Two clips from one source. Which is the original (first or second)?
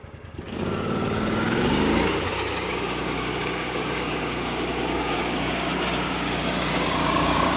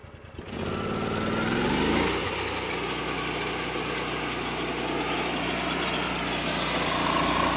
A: second